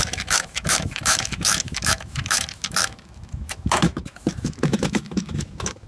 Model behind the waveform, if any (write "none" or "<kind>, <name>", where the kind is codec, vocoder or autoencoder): autoencoder, DAC-VAE